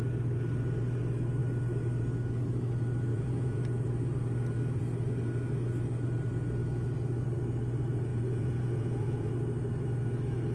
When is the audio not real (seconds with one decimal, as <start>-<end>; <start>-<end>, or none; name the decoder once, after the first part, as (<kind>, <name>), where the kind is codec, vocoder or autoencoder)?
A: 3.1-3.6 (vocoder, Vocos); 8.1-9.3